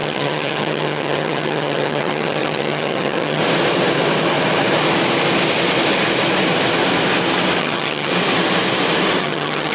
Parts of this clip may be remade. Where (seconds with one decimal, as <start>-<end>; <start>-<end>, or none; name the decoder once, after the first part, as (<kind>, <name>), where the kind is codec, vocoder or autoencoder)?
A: 0.0-3.4 (vocoder, HiFi-GAN); 7.6-8.1; 9.2-9.7